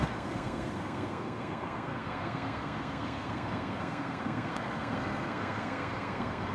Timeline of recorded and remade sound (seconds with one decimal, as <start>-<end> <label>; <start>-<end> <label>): 0.0-6.5 remade